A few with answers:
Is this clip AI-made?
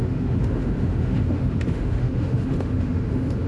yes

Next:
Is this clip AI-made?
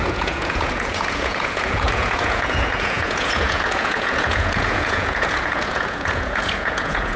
yes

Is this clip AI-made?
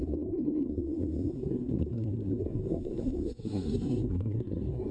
yes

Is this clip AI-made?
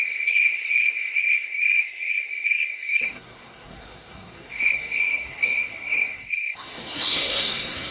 yes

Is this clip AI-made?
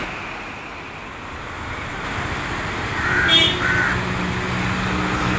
no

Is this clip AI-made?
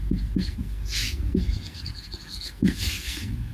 yes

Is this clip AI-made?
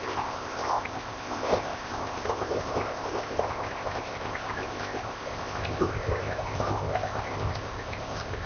yes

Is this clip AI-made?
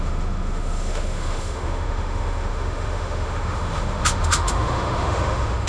yes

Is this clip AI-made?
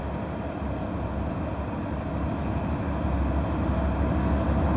no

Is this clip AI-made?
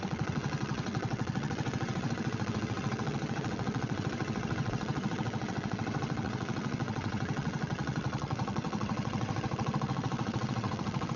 yes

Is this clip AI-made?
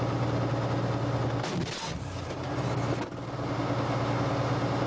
no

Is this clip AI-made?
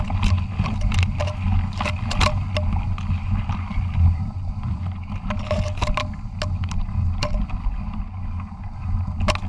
no